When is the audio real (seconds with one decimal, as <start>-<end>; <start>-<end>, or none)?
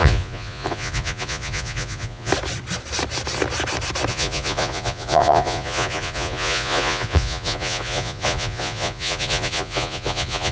2.3-4.1